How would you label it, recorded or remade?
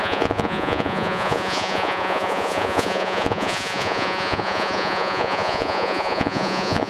remade